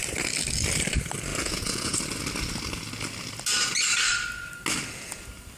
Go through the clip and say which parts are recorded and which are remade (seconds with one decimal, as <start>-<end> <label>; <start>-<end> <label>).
0.0-1.3 recorded; 1.3-2.0 remade; 2.0-5.6 recorded